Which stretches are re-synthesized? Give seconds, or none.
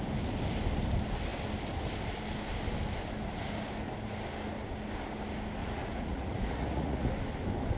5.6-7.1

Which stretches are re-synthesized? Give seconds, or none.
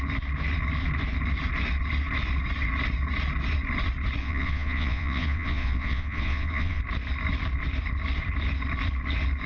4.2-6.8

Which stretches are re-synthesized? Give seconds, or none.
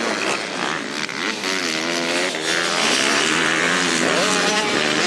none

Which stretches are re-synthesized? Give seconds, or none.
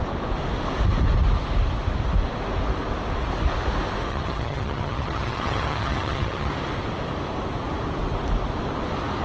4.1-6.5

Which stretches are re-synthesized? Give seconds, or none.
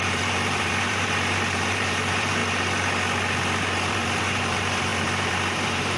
0.0-2.4; 3.9-6.0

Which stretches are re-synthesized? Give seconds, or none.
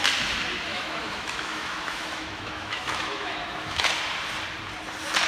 0.7-3.9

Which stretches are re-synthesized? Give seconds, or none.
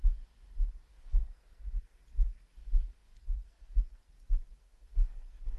0.9-2.0; 3.2-4.1; 4.6-5.6